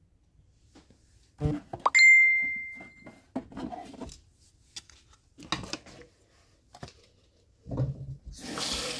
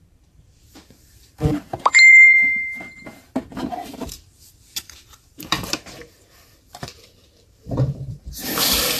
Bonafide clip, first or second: first